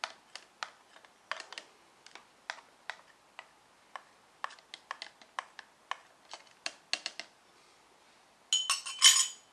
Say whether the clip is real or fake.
real